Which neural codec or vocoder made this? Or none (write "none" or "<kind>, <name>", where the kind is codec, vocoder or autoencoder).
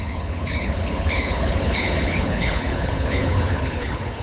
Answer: codec, HILCodec